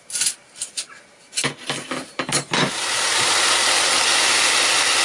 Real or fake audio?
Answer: real